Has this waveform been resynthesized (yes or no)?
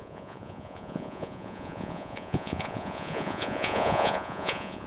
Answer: yes